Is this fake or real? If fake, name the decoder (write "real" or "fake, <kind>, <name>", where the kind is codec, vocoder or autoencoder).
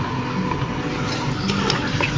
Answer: real